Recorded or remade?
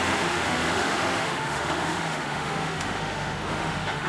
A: remade